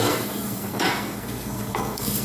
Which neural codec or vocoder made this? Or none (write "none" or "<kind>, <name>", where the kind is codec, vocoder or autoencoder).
codec, SNAC